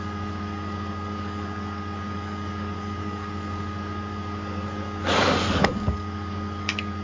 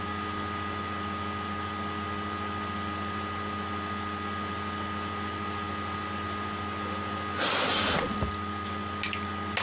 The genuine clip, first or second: second